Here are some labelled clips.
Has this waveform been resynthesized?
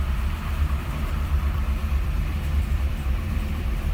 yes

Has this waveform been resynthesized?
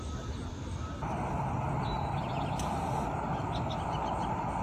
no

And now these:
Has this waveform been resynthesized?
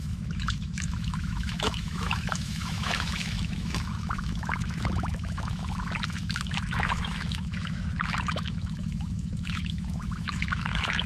yes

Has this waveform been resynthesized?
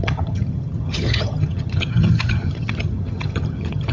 yes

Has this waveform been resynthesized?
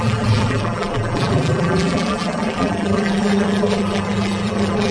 yes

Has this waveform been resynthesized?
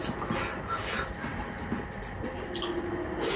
no